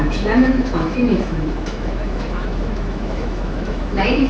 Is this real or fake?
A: fake